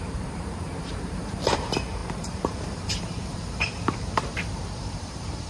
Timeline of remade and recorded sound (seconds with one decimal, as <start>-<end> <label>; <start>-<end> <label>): 0.0-5.5 remade